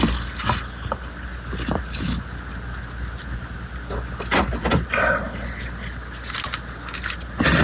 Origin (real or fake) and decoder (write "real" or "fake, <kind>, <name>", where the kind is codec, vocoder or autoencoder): real